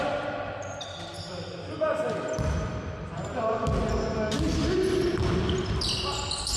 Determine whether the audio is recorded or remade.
recorded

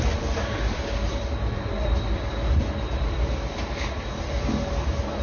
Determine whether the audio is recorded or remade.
remade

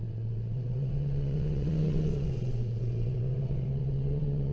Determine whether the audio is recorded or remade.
remade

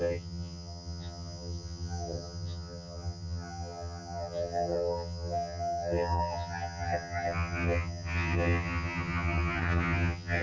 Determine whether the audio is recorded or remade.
remade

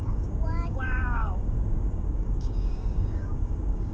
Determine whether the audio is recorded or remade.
remade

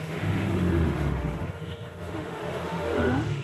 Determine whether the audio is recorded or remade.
remade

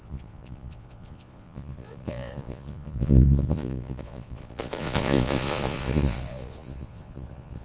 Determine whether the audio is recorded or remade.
remade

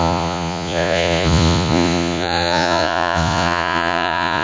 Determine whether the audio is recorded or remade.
remade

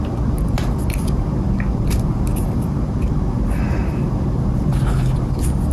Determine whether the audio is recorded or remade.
recorded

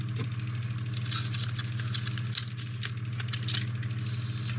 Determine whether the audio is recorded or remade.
recorded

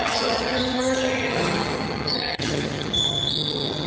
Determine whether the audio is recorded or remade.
remade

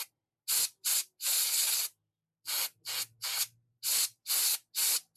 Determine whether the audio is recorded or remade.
recorded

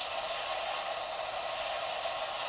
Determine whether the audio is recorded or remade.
recorded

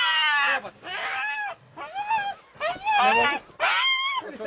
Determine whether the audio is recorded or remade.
recorded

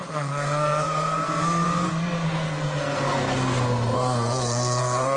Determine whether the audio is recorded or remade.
remade